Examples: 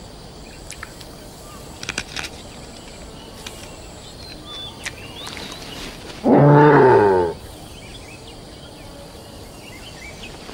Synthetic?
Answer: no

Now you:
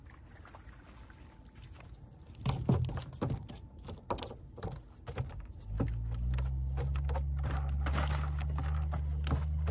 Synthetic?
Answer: no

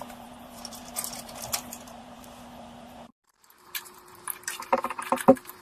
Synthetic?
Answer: yes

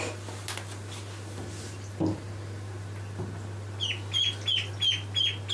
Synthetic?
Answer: no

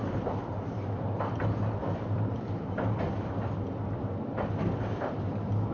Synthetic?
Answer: yes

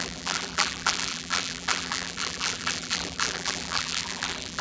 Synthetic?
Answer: yes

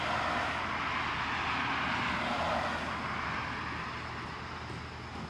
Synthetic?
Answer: no